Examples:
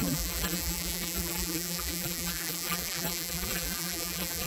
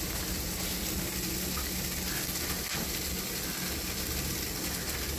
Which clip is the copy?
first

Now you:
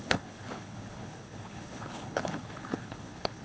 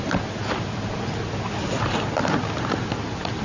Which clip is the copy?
first